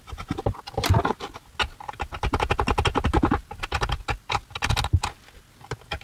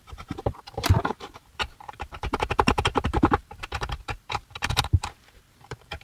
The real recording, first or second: first